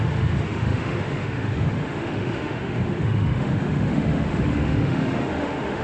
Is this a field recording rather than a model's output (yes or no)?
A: no